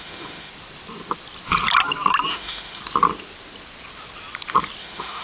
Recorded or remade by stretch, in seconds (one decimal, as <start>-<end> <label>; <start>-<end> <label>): 0.0-0.5 remade; 0.5-2.3 recorded; 2.3-2.8 remade; 2.8-4.8 recorded; 4.8-5.2 remade